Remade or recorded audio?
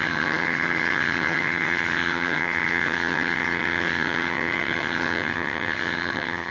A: remade